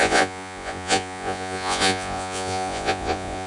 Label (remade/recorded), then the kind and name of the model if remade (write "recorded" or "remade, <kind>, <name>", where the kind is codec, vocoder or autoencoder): remade, vocoder, Vocos